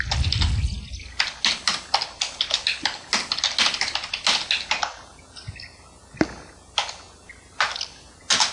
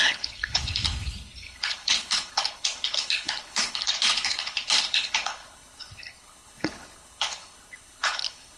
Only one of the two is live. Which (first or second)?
first